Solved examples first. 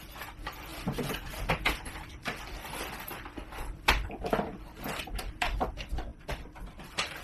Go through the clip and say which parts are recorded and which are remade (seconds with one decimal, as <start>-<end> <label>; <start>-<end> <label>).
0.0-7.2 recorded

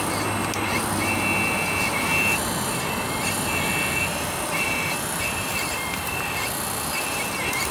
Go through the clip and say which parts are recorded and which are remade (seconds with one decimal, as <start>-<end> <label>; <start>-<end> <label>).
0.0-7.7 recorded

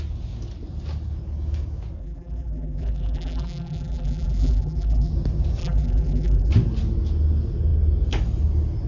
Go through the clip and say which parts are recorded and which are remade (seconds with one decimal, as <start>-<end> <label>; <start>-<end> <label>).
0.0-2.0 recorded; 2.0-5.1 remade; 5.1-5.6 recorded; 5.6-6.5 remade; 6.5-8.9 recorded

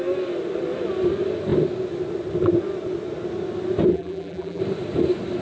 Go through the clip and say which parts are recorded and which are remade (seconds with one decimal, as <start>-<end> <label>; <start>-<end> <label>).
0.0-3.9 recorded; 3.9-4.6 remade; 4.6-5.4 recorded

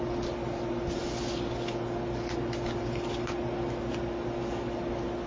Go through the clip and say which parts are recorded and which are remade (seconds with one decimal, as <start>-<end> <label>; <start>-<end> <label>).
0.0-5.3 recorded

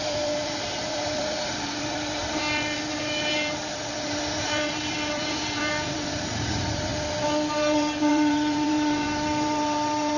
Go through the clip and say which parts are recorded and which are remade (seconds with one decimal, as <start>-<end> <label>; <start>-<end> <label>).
0.0-6.9 remade; 6.9-7.5 recorded; 7.5-10.2 remade